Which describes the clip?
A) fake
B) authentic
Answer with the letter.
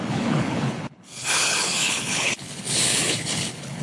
A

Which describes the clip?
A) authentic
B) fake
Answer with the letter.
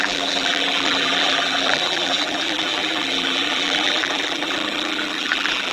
B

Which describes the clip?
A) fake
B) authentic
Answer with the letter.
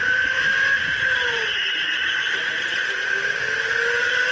B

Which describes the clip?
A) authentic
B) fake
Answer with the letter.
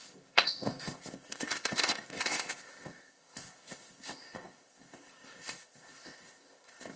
B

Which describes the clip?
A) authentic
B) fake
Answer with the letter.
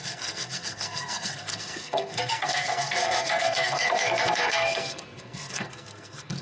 B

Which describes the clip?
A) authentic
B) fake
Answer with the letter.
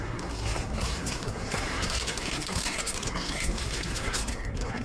B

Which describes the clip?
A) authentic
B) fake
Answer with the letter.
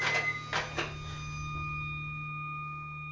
A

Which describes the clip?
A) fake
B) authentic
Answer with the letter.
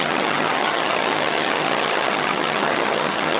A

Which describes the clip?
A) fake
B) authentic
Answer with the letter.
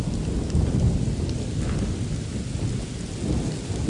B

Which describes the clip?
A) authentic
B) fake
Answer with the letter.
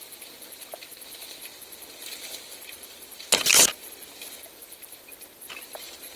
A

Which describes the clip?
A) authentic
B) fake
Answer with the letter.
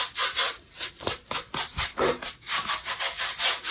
A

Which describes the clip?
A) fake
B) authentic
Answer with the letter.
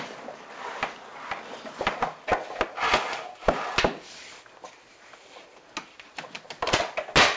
B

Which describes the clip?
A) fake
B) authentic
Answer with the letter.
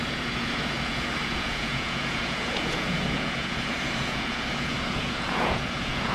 A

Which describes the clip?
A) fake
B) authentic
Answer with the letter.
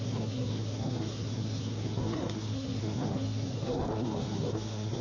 A